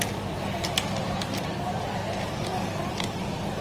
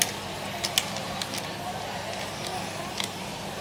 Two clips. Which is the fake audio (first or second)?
first